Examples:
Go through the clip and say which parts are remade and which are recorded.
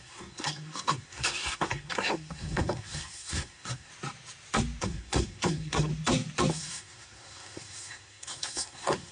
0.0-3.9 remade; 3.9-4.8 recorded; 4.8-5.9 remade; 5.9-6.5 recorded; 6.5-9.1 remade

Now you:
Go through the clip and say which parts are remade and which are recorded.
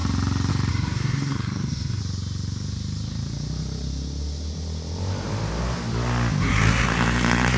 0.0-0.7 recorded; 0.7-2.0 remade; 2.0-6.4 recorded; 6.4-7.6 remade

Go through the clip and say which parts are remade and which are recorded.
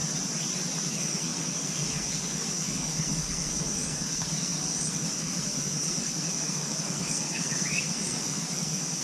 0.0-0.9 recorded; 0.9-9.0 remade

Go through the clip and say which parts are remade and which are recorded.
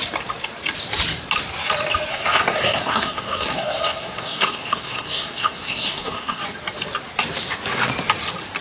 0.0-2.1 recorded; 2.1-6.4 remade; 6.4-8.6 recorded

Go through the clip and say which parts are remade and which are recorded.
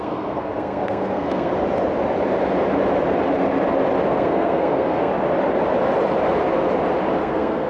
0.0-1.5 remade; 1.5-4.1 recorded; 4.1-5.1 remade; 5.1-7.2 recorded; 7.2-7.7 remade